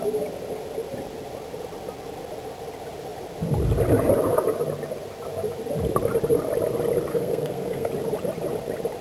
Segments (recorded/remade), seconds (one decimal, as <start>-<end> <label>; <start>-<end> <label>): 0.0-7.1 recorded; 7.1-7.9 remade; 7.9-9.0 recorded